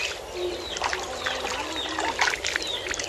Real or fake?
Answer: real